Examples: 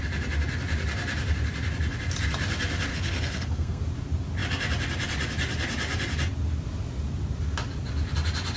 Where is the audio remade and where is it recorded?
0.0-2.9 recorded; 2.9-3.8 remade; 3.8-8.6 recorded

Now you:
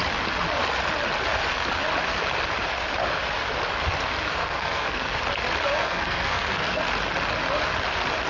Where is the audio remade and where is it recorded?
0.0-4.3 recorded; 4.3-5.2 remade; 5.2-5.8 recorded; 5.8-6.8 remade; 6.8-8.3 recorded